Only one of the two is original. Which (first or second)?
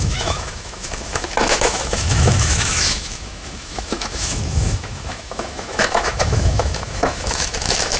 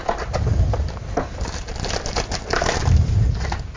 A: second